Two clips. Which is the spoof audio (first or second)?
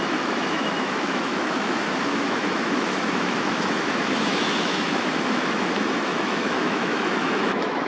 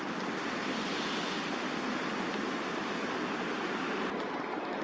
first